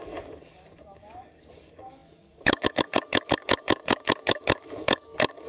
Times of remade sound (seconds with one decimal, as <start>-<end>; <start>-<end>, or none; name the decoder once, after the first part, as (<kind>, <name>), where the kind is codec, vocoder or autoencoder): 0.0-5.5 (codec, DAC)

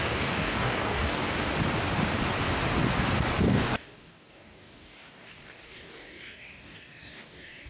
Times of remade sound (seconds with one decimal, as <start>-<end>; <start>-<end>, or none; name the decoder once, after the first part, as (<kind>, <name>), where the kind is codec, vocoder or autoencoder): 0.0-1.2 (codec, DAC); 3.4-7.7